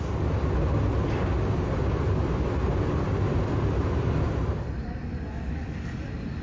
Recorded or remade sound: recorded